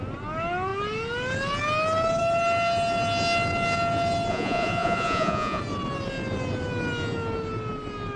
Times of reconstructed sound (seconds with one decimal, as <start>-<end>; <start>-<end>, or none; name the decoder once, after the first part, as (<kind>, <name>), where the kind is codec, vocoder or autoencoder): 4.3-5.6 (vocoder, Vocos)